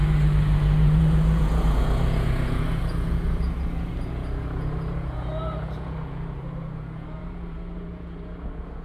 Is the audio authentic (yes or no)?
no